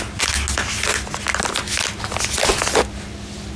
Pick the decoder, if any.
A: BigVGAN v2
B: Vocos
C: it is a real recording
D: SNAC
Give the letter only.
C